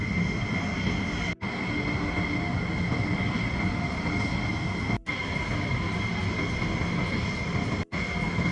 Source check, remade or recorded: recorded